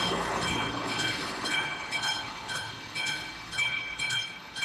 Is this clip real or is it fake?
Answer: fake